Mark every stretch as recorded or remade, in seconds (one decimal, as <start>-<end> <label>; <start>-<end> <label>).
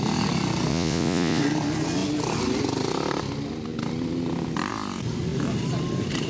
0.0-0.7 recorded; 0.7-1.4 remade; 1.4-6.3 recorded